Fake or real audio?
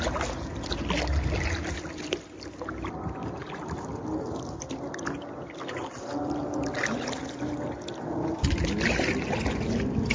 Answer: real